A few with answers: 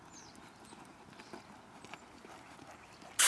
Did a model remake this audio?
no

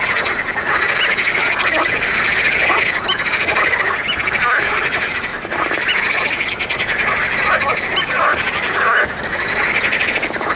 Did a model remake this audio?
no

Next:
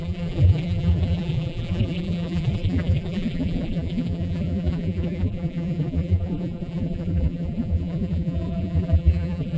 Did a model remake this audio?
yes